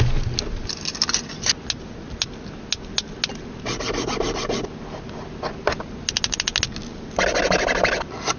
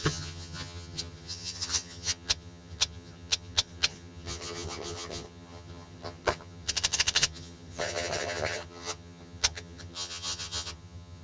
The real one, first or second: first